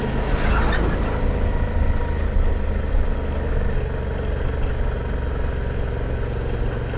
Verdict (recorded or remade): recorded